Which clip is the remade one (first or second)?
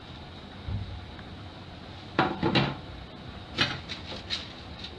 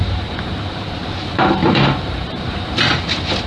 second